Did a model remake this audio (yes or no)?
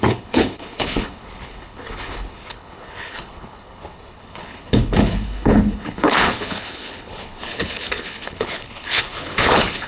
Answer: yes